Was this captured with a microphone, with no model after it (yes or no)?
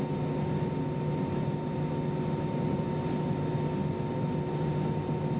yes